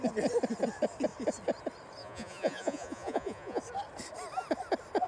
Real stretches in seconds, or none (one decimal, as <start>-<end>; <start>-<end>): 0.0-2.0; 3.6-5.1